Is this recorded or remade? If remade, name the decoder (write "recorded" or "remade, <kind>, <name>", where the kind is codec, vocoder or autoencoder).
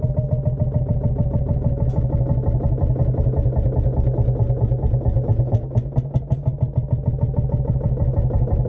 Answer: recorded